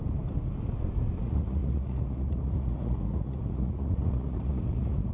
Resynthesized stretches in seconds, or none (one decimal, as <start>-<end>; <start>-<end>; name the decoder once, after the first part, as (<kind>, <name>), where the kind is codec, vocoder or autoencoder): 1.2-5.1 (vocoder, Vocos)